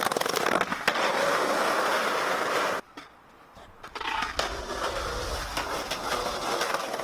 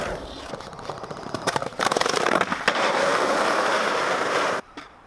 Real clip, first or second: first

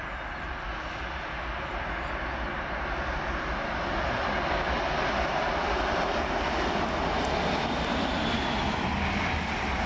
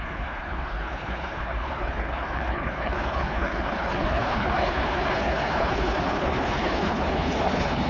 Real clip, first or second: first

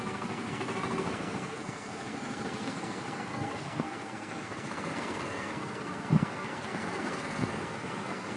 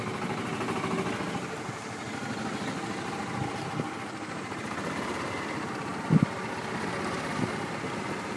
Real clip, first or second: second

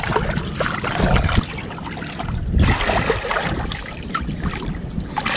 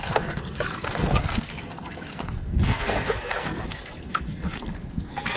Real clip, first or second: first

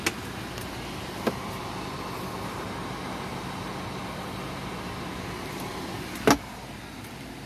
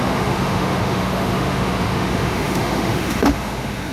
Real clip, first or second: first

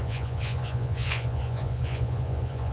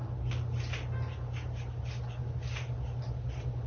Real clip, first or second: second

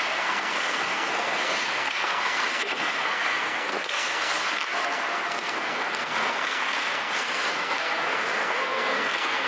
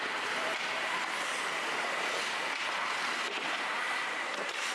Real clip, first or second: second